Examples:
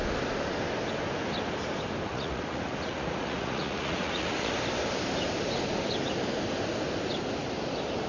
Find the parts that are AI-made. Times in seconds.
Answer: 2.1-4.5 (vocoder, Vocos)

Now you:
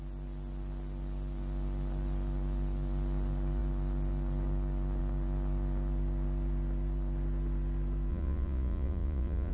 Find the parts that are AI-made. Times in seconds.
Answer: 8.1-9.5 (vocoder, Vocos)

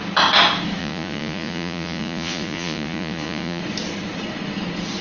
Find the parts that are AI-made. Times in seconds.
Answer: 0.8-3.6 (vocoder, Vocos)

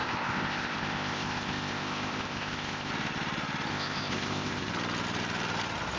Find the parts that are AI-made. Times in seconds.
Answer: 0.0-2.9 (codec, ZipCodec); 3.7-4.7

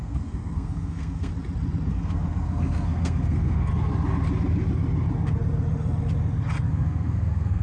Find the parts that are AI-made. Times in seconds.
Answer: 0.0-1.3 (codec, SNAC); 1.9-3.7; 6.7-7.6

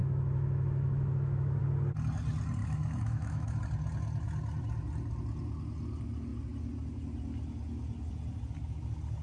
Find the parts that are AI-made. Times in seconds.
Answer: 0.0-1.6 (autoencoder, DAC-VAE); 2.6-3.6